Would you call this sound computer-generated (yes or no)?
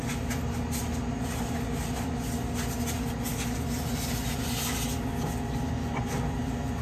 no